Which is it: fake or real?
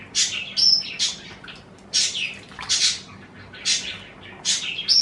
real